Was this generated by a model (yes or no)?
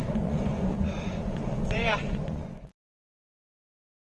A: yes